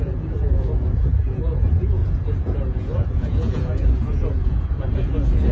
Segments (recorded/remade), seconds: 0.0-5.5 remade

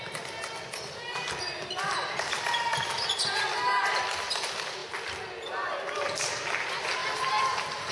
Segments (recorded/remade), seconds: 0.0-7.0 recorded; 7.0-7.9 remade

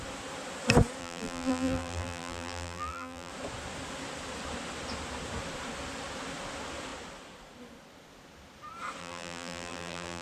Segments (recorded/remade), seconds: 0.0-1.0 recorded; 1.0-3.3 remade; 3.3-9.0 recorded; 9.0-10.2 remade

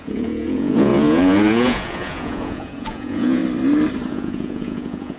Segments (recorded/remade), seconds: 0.0-3.4 remade; 3.4-4.1 recorded; 4.1-5.2 remade